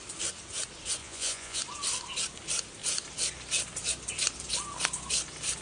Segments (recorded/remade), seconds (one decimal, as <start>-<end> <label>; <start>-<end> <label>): 0.0-1.0 recorded; 1.0-1.6 remade; 1.6-5.6 recorded